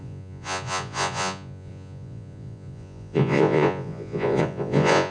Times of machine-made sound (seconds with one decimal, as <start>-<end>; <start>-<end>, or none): 0.0-5.1